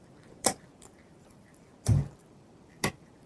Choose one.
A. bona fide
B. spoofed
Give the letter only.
B